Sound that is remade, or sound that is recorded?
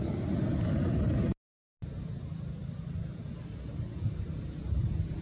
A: recorded